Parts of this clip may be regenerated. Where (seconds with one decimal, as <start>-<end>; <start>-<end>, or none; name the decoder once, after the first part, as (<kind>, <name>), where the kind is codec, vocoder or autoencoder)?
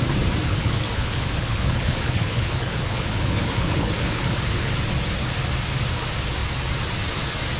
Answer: 0.5-4.7 (codec, HILCodec)